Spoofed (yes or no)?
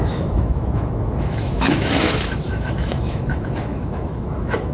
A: yes